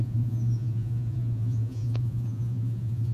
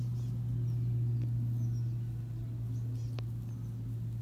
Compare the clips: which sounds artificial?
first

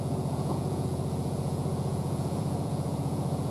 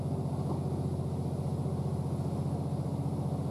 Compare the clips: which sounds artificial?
first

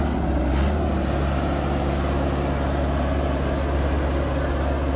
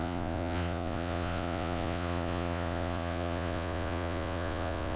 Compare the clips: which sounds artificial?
second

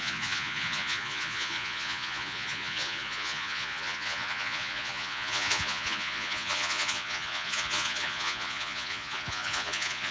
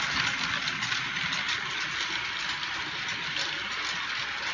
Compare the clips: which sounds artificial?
first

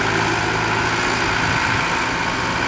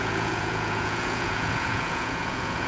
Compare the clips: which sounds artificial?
second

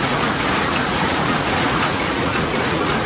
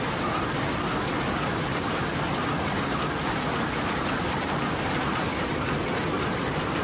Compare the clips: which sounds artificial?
first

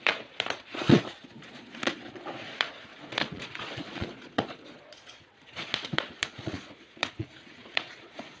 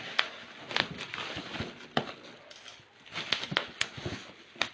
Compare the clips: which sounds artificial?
first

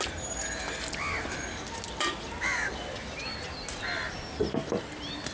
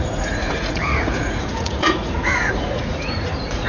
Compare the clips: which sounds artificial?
second